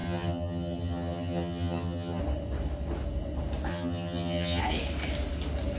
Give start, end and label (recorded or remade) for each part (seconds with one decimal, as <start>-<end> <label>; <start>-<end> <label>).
0.0-2.2 remade; 2.2-3.7 recorded; 3.7-4.6 remade; 4.6-5.8 recorded